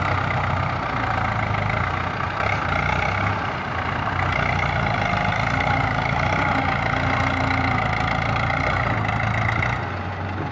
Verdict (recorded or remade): recorded